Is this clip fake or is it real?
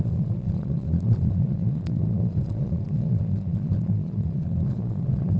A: fake